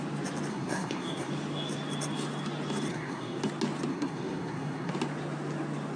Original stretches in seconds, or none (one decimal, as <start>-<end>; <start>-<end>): 0.0-0.5; 1.3-2.9; 3.4-3.9; 4.9-6.0